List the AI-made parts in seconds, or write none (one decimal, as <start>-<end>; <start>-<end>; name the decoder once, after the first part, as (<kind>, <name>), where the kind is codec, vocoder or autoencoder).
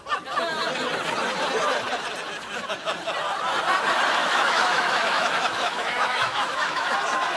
4.2-6.9 (autoencoder, DAC-VAE)